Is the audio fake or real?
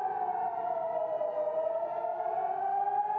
real